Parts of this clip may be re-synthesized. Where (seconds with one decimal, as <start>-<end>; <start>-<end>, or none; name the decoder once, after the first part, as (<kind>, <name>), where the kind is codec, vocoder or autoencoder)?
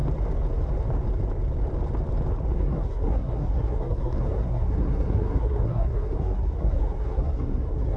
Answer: 2.5-8.0 (codec, SNAC)